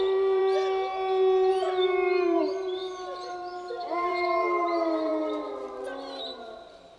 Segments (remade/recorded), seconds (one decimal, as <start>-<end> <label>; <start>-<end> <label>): 0.0-0.4 remade; 0.4-1.5 recorded; 1.5-2.8 remade; 2.8-3.3 recorded; 3.3-5.1 remade; 5.1-7.0 recorded